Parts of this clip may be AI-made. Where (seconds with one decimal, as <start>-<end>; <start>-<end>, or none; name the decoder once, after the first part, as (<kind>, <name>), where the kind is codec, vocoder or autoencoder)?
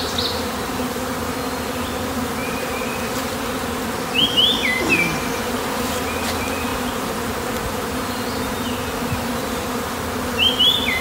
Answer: none